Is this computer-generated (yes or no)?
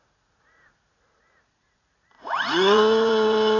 yes